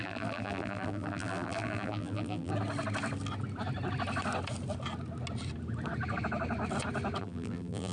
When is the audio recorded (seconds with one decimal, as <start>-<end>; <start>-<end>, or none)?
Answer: 2.5-7.2